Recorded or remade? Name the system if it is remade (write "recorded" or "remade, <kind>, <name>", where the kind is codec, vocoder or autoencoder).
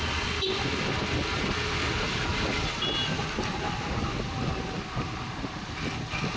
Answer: recorded